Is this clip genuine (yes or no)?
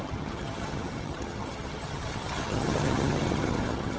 no